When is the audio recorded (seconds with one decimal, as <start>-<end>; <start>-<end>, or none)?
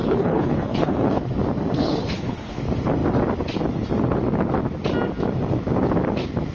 1.2-1.8; 2.6-6.5